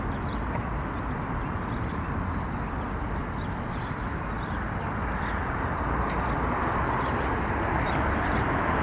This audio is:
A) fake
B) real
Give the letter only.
B